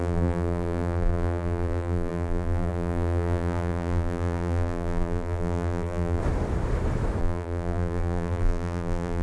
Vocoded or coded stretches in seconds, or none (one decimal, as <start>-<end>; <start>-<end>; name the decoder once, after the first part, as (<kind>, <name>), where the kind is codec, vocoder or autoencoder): 0.0-6.2 (vocoder, BigVGAN v2); 7.2-9.2